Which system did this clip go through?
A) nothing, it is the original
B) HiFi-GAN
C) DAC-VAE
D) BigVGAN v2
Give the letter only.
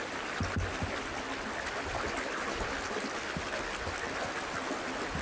A